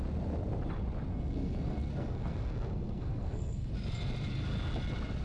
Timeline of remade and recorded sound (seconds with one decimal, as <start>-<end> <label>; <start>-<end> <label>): 0.0-1.1 recorded; 1.1-3.7 remade; 3.7-5.2 recorded

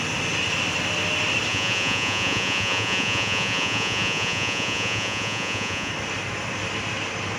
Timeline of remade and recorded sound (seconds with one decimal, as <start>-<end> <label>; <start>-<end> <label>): 0.0-1.5 recorded; 1.5-5.9 remade; 5.9-7.4 recorded